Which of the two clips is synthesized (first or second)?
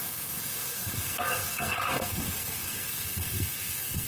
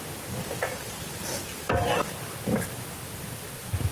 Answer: first